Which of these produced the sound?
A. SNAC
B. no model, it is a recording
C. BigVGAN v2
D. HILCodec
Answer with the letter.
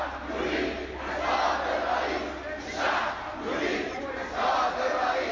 B